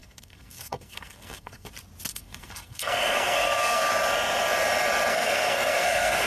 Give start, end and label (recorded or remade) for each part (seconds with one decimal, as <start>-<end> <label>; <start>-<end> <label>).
0.0-1.7 remade; 1.7-2.1 recorded; 2.1-3.9 remade; 3.9-5.1 recorded; 5.1-6.3 remade